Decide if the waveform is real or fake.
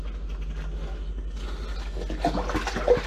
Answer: real